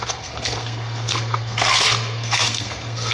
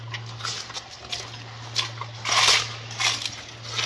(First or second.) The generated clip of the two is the first